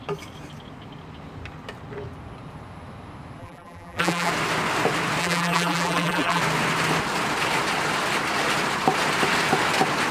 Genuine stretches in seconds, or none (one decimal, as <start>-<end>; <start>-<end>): 0.0-3.4; 4.3-5.2; 6.4-10.1